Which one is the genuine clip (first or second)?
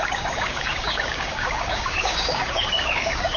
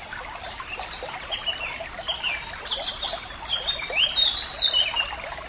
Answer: second